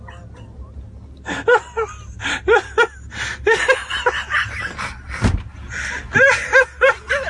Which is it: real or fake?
real